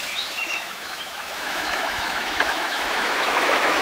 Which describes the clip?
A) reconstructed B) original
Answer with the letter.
A